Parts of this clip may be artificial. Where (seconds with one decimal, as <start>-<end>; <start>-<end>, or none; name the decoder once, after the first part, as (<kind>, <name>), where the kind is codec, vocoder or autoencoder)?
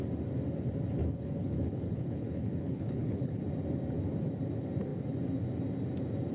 1.0-3.4 (codec, HILCodec)